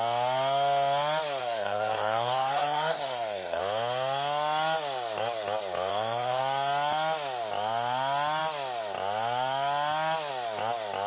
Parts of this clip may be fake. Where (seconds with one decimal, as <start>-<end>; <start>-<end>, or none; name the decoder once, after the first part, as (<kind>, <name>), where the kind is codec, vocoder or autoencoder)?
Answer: 1.4-3.6 (codec, SNAC); 5.9-6.4